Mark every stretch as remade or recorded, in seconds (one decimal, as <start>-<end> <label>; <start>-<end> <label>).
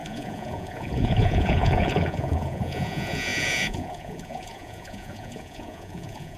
0.0-6.4 remade